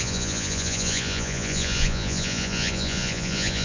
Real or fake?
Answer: fake